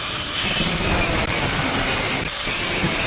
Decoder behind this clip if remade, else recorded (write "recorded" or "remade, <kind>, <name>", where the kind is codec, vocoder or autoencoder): remade, vocoder, BigVGAN v2